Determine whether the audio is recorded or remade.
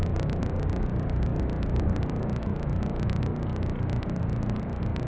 recorded